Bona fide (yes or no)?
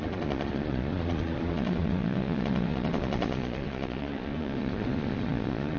no